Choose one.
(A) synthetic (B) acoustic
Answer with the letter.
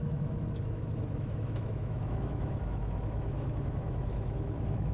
A